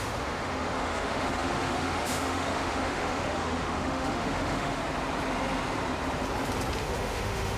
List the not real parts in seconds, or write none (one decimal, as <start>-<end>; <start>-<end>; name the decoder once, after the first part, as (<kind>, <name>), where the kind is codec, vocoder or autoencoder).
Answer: 0.0-4.8 (autoencoder, DAC-VAE); 6.8-7.6